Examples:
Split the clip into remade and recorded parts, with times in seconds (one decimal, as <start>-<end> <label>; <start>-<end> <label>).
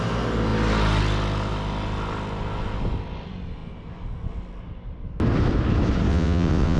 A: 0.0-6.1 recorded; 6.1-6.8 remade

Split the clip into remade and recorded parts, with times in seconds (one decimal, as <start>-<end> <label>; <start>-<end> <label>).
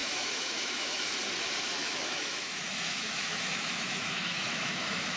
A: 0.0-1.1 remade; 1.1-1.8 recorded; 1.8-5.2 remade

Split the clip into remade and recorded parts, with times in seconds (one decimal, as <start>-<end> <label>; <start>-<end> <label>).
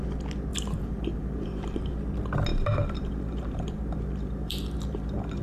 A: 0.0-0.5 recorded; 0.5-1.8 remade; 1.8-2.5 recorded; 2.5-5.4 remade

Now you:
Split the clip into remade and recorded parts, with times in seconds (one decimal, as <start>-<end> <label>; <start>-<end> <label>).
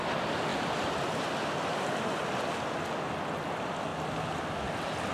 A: 0.0-5.1 recorded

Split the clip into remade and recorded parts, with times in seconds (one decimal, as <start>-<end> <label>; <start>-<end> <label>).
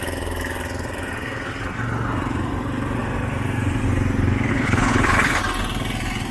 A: 0.0-4.5 recorded; 4.5-5.4 remade; 5.4-6.3 recorded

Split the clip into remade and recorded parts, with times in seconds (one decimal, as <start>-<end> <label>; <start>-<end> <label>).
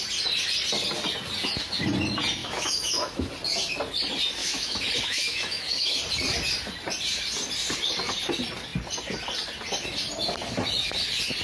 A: 0.0-2.4 recorded; 2.4-3.3 remade; 3.3-4.4 recorded; 4.4-6.0 remade; 6.0-11.4 recorded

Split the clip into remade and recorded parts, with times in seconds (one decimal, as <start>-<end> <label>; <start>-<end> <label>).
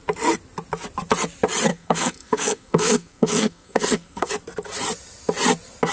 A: 0.0-1.7 recorded; 1.7-4.3 remade; 4.3-5.9 recorded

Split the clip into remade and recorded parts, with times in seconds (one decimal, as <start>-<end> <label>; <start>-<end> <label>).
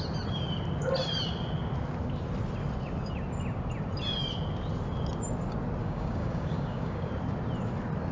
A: 0.0-5.8 recorded; 5.8-7.1 remade; 7.1-8.1 recorded